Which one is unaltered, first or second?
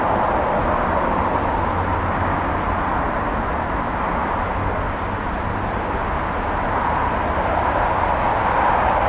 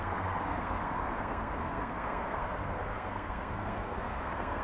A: first